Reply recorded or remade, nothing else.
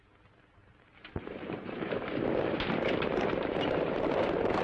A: remade